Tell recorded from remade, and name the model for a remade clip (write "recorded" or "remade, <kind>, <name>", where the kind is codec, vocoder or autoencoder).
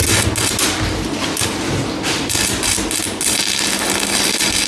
recorded